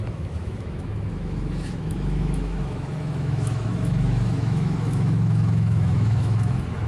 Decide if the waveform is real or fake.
fake